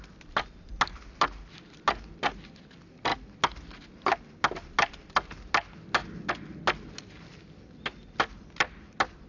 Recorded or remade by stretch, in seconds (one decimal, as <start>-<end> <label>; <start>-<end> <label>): 0.0-9.3 recorded